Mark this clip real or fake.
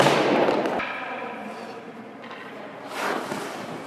real